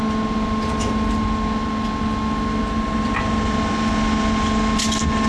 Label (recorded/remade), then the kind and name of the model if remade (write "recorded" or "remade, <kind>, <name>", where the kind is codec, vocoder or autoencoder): recorded